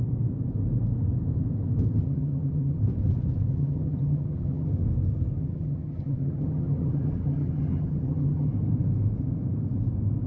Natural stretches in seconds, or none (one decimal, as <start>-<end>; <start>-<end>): 0.0-2.0; 2.8-3.5; 4.7-5.4; 8.5-10.3